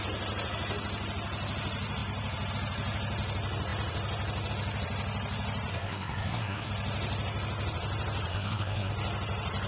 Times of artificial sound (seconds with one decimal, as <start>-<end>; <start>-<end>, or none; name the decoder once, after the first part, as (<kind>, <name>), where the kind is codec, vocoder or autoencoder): 5.7-6.7 (codec, SNAC); 8.3-8.9